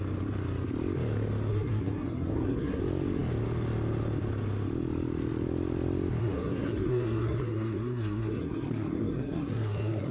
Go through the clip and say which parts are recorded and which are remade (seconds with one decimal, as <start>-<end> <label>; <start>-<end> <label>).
0.0-1.5 recorded; 1.5-2.8 remade; 2.8-6.2 recorded; 6.2-10.1 remade